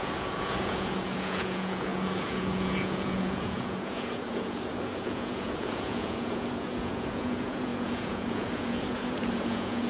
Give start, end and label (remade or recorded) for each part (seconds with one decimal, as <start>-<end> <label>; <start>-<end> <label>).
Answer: 0.0-9.9 remade

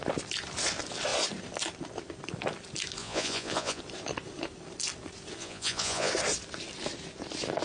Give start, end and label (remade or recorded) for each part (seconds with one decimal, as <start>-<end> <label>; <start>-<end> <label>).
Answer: 0.0-3.0 recorded; 3.0-3.8 remade; 3.8-5.4 recorded; 5.4-6.1 remade; 6.1-7.6 recorded